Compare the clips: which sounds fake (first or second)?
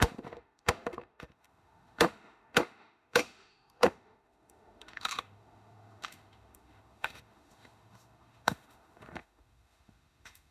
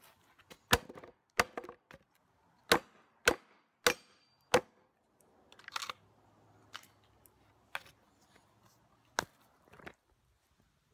first